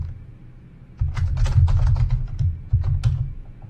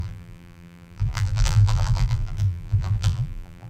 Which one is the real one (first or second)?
first